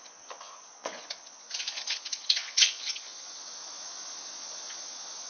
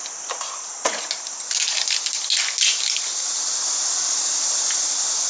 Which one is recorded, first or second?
second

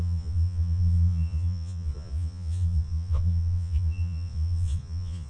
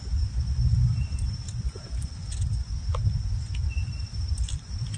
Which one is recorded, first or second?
second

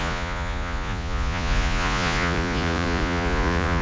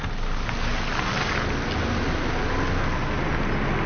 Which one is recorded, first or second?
second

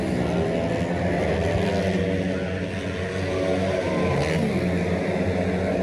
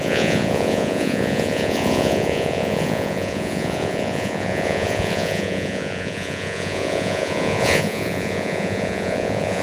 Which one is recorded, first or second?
first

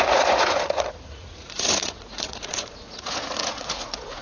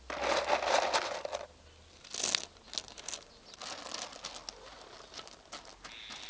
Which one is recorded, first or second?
second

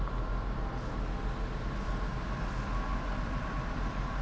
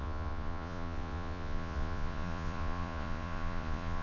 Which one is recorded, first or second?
first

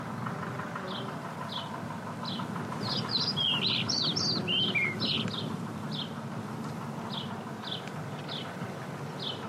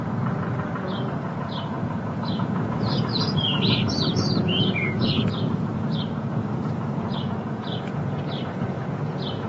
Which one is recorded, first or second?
first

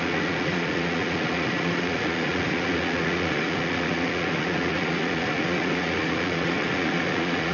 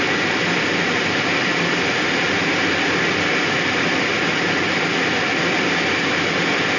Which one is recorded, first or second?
second